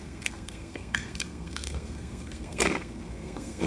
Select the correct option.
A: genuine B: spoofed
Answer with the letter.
B